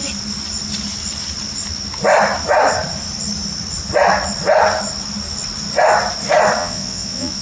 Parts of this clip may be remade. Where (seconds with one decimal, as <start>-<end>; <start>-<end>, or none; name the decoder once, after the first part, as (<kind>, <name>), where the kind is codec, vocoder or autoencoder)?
6.6-7.4 (vocoder, Vocos)